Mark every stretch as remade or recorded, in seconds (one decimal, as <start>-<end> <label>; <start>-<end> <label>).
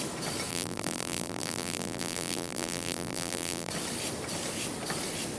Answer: 0.0-0.5 recorded; 0.5-3.7 remade; 3.7-5.4 recorded